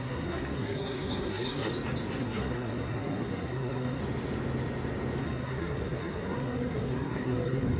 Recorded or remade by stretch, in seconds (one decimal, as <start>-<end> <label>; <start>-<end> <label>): 0.0-1.7 remade; 1.7-2.2 recorded; 2.2-4.0 remade; 4.0-5.2 recorded; 5.2-7.8 remade